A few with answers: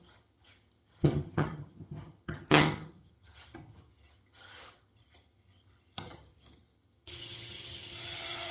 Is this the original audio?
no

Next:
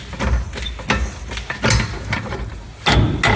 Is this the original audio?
yes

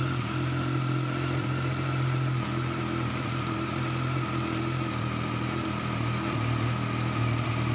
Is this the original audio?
no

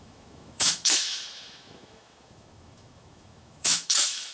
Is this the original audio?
no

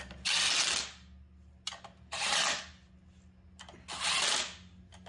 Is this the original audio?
yes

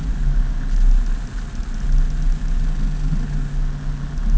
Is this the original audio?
yes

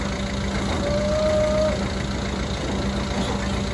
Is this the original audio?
yes